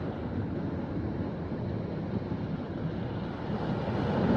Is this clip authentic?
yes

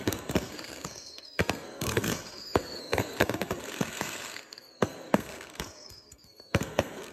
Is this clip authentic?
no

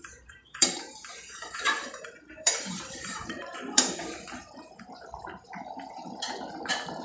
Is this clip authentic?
no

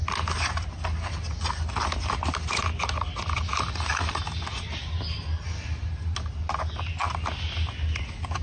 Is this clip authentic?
yes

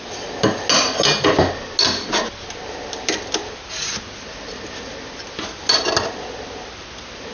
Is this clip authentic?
yes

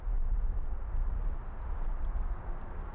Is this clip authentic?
yes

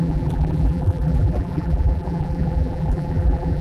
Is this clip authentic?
no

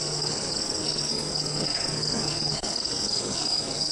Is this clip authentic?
no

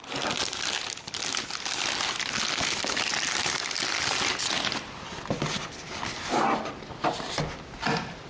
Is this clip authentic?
yes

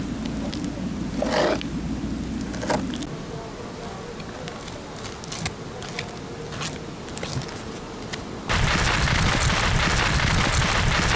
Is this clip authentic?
yes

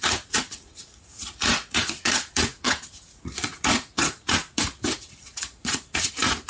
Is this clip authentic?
no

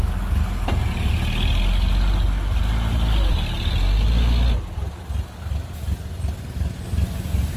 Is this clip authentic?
yes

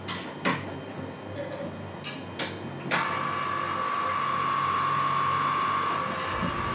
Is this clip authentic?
yes